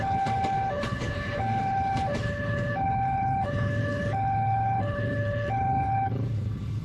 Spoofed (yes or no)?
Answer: yes